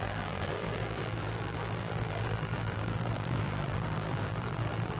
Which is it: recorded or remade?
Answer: remade